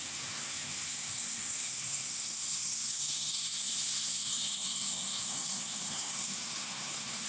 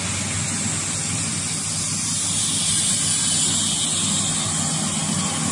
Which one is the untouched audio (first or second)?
second